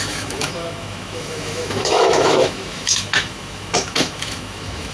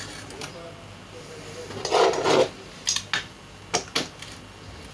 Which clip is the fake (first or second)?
first